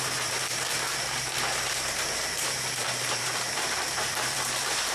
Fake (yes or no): yes